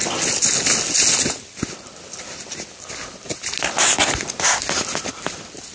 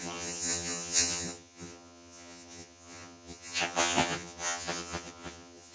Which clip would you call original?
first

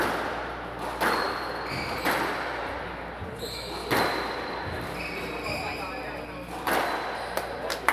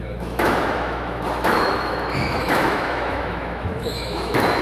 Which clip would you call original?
first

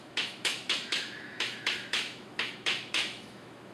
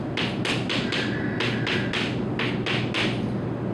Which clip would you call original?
second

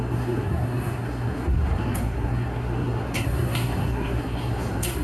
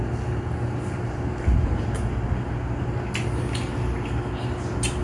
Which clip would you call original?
second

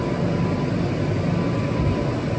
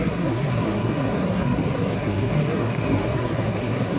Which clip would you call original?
first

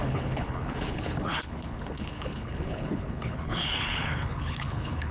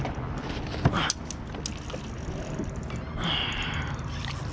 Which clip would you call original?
second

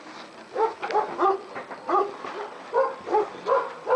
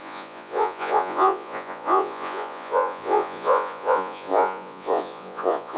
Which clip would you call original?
first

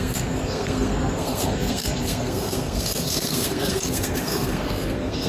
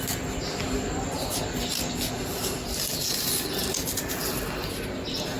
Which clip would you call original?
second